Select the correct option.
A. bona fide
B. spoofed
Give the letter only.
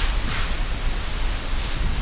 A